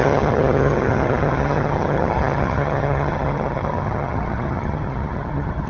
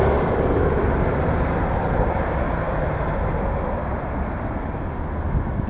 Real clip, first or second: second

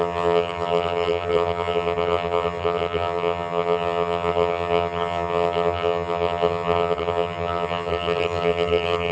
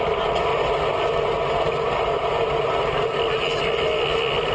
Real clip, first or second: second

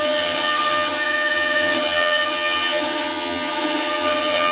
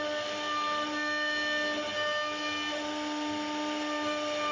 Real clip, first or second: second